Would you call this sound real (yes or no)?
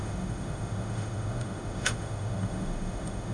no